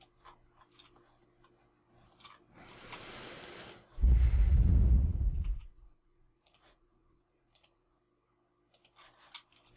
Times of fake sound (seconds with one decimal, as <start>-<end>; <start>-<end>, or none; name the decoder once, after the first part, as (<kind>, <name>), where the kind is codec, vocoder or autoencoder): 3.9-8.0 (vocoder, Vocos)